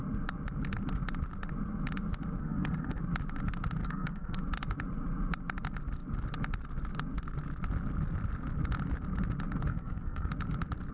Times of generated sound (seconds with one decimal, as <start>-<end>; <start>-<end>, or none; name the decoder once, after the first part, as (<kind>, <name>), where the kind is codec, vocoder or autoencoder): 2.4-3.0 (codec, SNAC); 3.8-4.4; 9.7-10.3